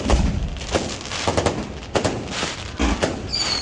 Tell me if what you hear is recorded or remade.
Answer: recorded